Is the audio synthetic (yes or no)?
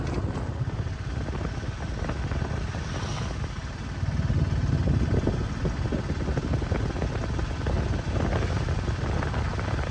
no